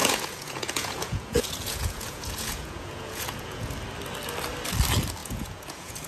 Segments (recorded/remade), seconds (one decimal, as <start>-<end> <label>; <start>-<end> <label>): 0.0-3.7 remade; 3.7-5.2 recorded; 5.2-6.1 remade